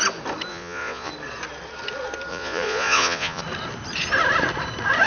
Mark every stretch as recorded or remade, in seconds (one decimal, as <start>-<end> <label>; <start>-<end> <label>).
0.0-0.5 recorded; 0.5-1.1 remade; 1.1-2.3 recorded; 2.3-3.4 remade; 3.4-5.1 recorded